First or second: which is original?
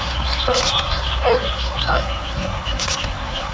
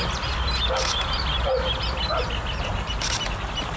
second